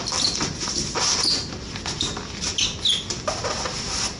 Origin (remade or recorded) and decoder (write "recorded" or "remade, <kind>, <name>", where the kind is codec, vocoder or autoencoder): recorded